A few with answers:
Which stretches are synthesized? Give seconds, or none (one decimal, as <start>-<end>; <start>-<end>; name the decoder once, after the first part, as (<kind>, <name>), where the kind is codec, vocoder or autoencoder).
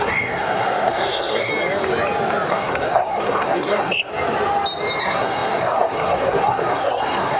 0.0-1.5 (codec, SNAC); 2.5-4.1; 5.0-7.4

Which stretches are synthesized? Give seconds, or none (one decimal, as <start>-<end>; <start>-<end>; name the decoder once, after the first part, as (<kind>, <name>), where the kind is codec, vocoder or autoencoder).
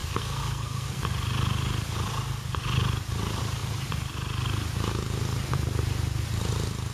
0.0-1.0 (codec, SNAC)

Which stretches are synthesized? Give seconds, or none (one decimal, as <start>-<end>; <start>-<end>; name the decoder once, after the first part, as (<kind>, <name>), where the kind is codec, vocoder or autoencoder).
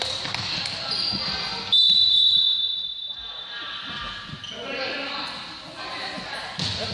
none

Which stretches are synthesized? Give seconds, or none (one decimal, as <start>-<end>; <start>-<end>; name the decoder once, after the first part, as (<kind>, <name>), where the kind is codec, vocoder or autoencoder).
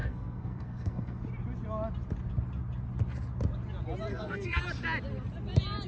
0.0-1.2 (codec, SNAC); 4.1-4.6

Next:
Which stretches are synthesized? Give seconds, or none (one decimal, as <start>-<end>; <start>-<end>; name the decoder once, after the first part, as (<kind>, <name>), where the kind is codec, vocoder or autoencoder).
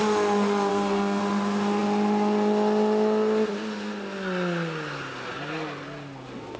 0.7-1.2 (codec, SNAC)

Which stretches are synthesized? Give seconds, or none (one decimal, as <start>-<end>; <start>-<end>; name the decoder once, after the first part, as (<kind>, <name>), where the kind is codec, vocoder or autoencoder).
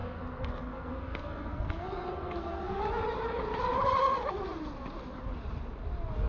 0.0-2.8 (codec, SNAC)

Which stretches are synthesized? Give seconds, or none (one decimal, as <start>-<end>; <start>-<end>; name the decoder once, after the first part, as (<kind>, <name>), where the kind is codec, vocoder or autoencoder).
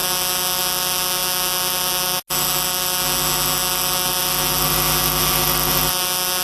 none